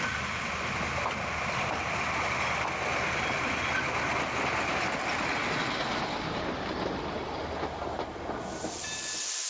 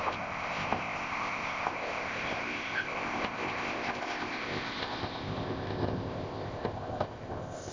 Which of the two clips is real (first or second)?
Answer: first